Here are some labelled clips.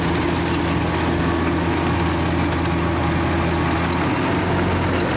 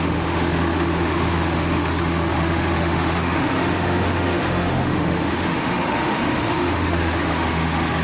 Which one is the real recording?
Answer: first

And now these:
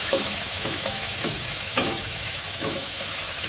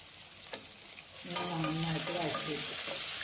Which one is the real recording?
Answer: second